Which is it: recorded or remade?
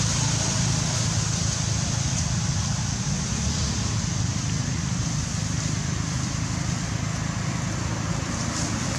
remade